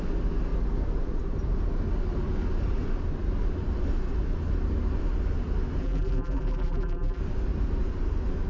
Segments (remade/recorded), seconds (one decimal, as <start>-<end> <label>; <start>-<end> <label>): 0.0-5.8 recorded; 5.8-7.2 remade; 7.2-8.5 recorded